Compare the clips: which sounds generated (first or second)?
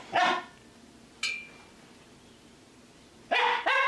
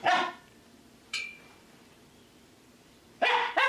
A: second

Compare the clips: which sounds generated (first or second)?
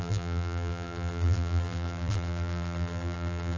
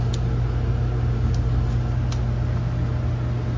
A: first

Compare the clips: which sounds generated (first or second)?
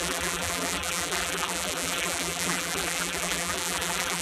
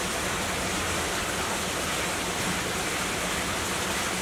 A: first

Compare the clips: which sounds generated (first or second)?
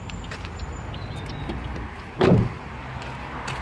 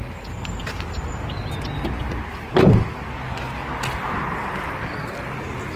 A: first